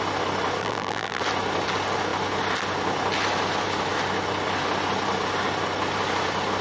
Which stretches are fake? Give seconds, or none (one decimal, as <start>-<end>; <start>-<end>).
0.6-1.2